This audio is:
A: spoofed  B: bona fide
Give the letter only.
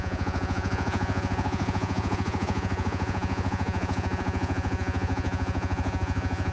A